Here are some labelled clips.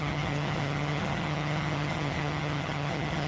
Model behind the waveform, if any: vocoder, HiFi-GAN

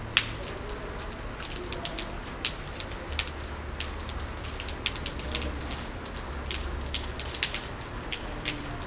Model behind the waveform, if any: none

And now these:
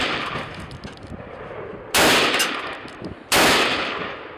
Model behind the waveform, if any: none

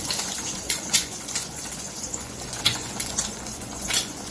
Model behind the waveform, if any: vocoder, Vocos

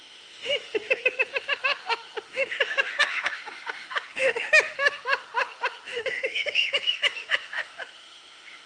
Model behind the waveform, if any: autoencoder, DAC-VAE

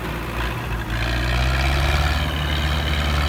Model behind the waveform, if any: none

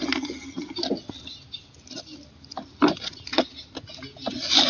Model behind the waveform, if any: none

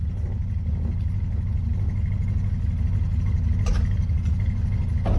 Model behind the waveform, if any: none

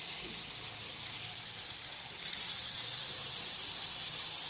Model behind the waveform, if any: none